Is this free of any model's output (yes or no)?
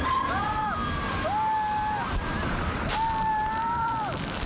yes